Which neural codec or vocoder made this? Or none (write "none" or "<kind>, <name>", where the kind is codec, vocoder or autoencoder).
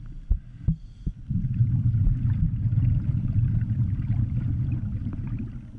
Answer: none